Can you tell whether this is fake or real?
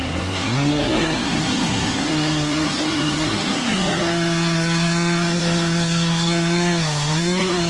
fake